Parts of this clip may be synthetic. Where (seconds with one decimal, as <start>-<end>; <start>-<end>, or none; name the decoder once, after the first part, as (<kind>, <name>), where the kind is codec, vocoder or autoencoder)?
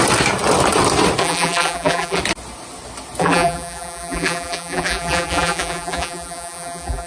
1.2-2.2 (vocoder, BigVGAN v2); 3.2-7.1